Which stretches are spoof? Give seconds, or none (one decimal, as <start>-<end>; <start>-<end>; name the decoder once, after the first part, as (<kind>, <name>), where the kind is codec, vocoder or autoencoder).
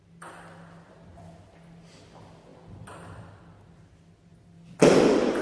none